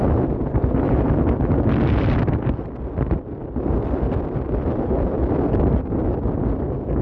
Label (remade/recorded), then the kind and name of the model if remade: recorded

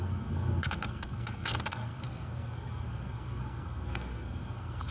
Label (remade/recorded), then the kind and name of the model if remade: remade, codec, SNAC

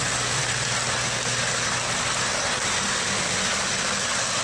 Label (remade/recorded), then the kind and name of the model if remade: recorded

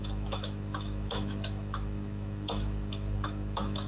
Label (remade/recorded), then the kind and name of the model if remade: remade, autoencoder, DAC-VAE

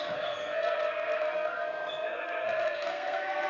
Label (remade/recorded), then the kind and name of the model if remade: remade, codec, SNAC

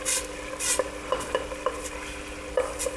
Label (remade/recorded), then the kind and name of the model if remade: recorded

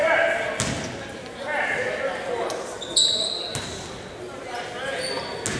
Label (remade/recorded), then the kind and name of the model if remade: recorded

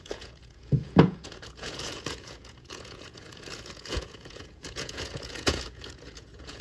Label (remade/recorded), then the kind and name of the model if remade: remade, vocoder, Vocos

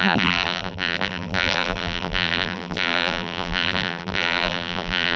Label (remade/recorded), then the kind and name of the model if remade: remade, vocoder, BigVGAN v2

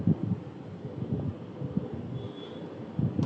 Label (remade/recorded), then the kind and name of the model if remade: recorded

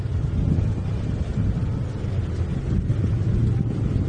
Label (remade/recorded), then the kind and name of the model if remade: recorded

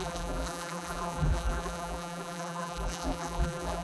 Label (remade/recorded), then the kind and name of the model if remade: remade, vocoder, BigVGAN v2